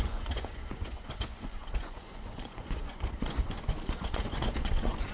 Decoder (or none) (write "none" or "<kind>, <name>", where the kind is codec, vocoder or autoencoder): vocoder, Vocos